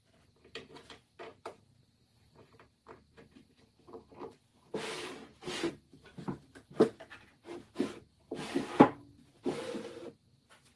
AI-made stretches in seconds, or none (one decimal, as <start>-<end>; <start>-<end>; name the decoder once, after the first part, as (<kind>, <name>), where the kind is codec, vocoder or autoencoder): 1.3-2.1 (vocoder, BigVGAN v2)